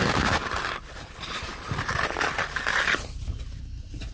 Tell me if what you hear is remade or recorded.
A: recorded